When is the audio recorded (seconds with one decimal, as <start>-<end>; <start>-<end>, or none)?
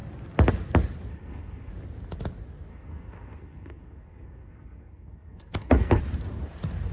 0.0-1.1; 1.7-2.7; 6.0-6.9